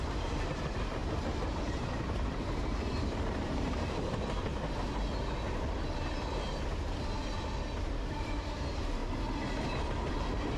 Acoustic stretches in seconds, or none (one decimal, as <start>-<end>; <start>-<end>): 4.5-7.8; 9.0-10.1

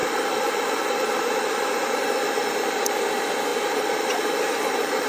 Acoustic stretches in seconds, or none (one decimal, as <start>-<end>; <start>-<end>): 3.1-3.5

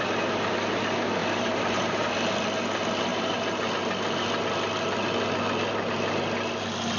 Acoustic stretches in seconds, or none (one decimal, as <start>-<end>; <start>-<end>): 0.0-1.2; 2.1-3.1; 3.7-7.0

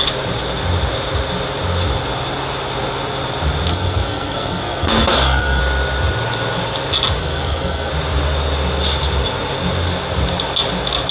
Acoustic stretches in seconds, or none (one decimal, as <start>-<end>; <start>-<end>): 0.0-3.7; 5.6-7.2; 7.9-11.1

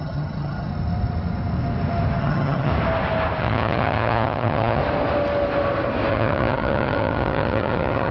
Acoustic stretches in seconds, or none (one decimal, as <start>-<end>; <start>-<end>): 0.7-2.2; 2.7-3.4; 4.8-6.1